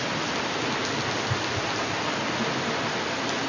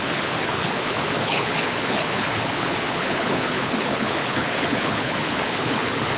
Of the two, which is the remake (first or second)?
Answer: second